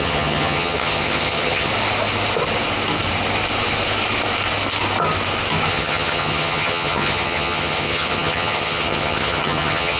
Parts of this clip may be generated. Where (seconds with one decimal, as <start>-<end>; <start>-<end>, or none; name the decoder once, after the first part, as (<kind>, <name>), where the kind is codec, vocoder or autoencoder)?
0.0-1.7 (vocoder, HiFi-GAN); 5.7-10.0